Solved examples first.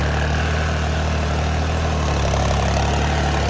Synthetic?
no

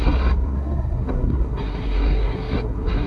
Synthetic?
yes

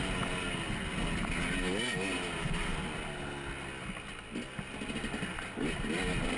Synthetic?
no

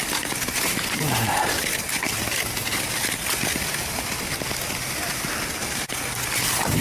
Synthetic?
no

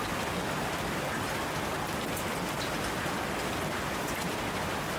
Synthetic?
no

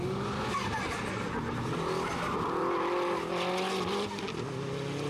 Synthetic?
no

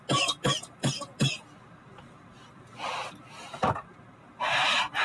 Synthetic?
no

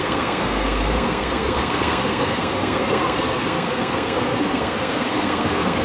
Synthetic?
yes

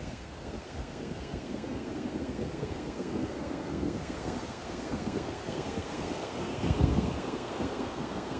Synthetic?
yes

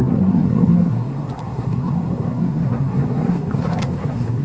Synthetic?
yes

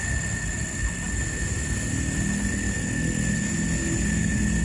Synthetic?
no